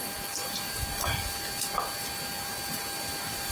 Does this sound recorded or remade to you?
recorded